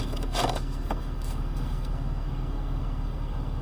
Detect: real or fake fake